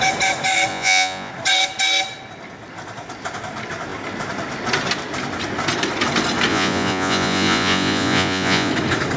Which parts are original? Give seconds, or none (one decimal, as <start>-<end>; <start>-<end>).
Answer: 0.0-0.7; 1.3-6.5; 8.7-9.2